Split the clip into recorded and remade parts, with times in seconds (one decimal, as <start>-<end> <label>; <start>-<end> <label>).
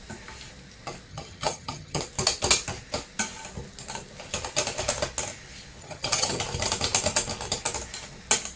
0.0-1.1 recorded; 1.1-2.0 remade; 2.0-5.8 recorded; 5.8-6.4 remade; 6.4-8.6 recorded